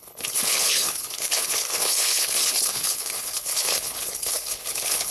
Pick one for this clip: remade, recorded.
remade